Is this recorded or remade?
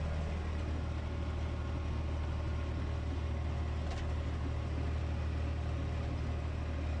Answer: recorded